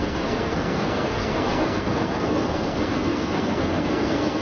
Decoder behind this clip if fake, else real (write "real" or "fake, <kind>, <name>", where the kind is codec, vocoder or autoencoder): fake, codec, SNAC